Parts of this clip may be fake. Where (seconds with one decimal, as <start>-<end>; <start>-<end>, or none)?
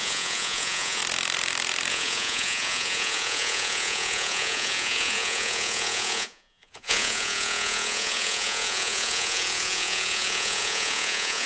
0.0-1.0; 1.9-11.5